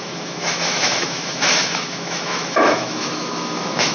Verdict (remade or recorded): remade